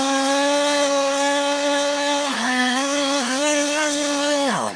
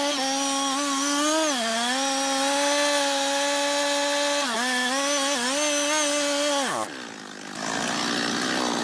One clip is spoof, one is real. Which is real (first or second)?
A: second